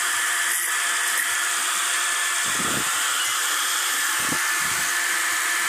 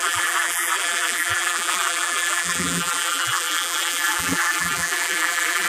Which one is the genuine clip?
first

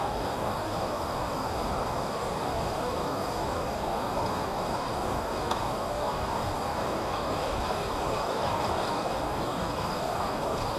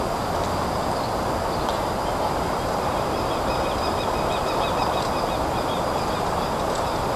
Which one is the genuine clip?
second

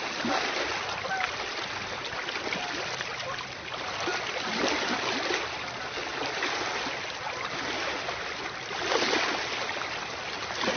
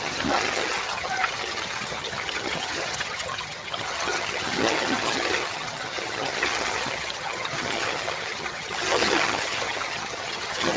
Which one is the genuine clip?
first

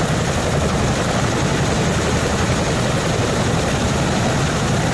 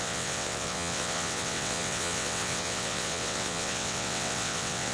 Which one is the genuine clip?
first